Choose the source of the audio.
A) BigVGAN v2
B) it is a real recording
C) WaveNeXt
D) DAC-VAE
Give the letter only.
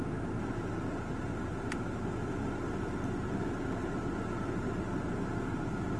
B